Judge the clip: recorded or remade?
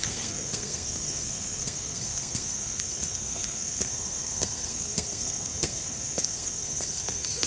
remade